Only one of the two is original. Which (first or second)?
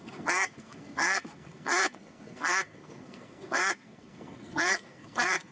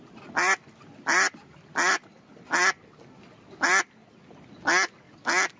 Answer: second